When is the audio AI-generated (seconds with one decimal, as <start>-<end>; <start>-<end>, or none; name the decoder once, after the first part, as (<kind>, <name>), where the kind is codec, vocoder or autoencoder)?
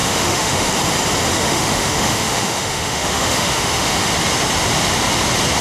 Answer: 0.0-0.7 (autoencoder, DAC-VAE); 1.3-4.1